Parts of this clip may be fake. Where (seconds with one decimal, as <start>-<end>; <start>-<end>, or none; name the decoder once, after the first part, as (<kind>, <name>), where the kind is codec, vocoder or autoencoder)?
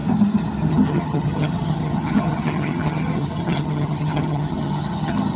0.7-5.4 (vocoder, HiFi-GAN)